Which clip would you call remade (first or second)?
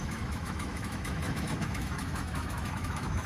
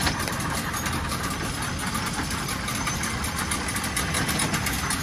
first